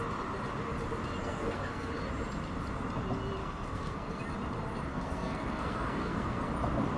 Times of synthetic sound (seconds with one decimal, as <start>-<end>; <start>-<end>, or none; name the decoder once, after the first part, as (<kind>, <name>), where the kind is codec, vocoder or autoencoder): 1.2-1.9 (codec, SNAC); 3.4-4.2; 4.9-6.5